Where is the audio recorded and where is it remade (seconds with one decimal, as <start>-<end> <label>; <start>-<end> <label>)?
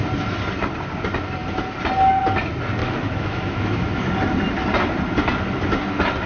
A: 0.0-2.8 recorded; 2.8-4.1 remade; 4.1-6.3 recorded